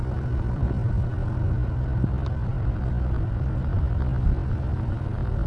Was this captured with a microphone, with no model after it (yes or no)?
yes